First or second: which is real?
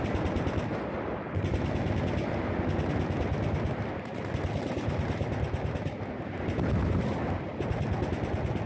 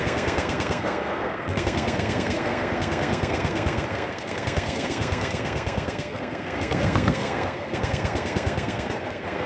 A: first